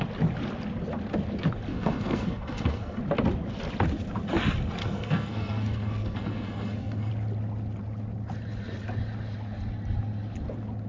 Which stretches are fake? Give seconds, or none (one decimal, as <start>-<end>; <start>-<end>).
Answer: 1.7-3.0; 4.8-7.1